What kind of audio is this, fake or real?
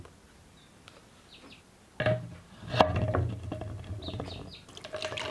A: real